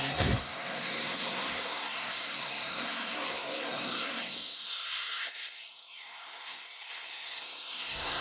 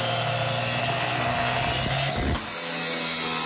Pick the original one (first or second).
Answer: second